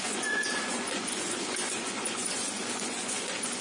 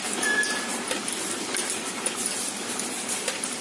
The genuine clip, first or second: second